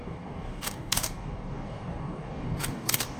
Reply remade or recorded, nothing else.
remade